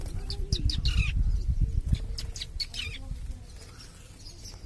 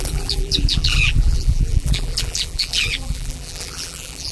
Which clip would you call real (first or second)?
first